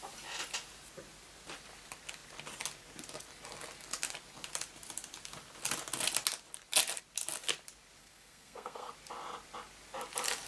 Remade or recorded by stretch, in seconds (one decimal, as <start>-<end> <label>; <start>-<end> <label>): 0.0-8.0 recorded; 8.0-8.9 remade; 8.9-10.5 recorded

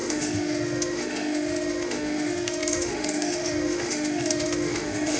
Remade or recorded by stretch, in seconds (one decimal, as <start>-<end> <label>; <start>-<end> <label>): 0.0-5.2 remade

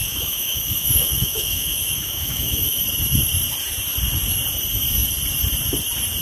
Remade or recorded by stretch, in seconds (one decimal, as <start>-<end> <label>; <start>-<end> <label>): 0.0-2.8 remade; 2.8-6.2 recorded